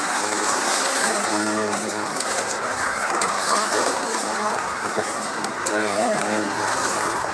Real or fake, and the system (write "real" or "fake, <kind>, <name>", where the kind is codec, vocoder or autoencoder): fake, codec, SNAC